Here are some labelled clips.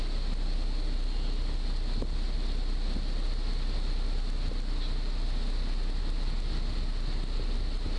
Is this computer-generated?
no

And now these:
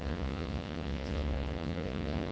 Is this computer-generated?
yes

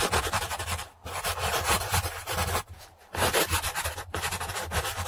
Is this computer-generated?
yes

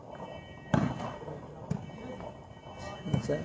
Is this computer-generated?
no